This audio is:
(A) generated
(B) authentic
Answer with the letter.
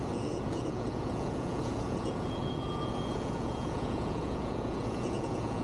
A